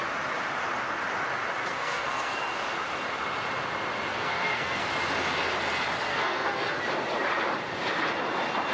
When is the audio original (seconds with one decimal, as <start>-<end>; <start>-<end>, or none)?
0.0-1.6; 2.4-4.1; 4.9-6.1; 6.8-8.7